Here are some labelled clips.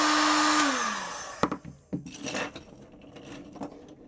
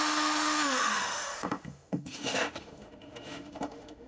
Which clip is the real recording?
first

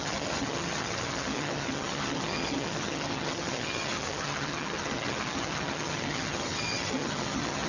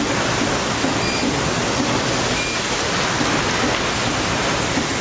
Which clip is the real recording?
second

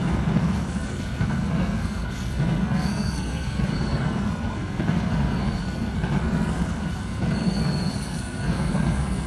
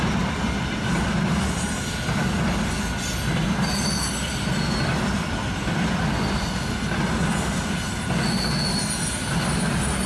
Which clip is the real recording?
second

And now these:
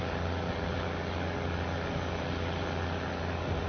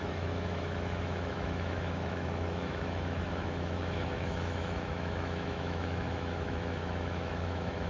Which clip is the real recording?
first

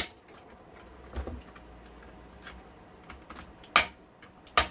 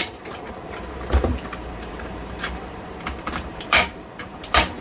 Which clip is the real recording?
first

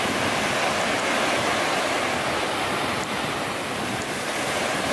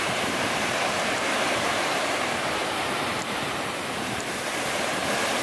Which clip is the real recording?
first